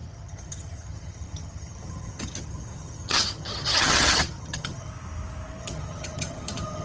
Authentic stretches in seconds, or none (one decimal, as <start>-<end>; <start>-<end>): 4.9-5.6